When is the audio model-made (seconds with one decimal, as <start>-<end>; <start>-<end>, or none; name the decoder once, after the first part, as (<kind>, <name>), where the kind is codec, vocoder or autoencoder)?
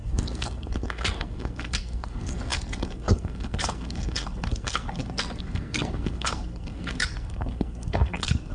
0.0-8.5 (codec, SNAC)